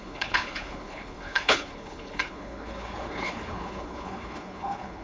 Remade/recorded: remade